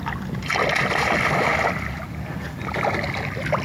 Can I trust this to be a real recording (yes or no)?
yes